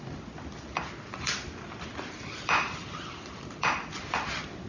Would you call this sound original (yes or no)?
yes